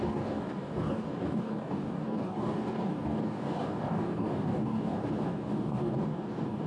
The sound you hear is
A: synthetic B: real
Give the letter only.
A